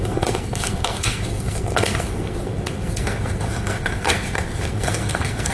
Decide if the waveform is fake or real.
fake